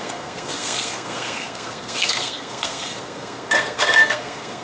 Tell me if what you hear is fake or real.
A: fake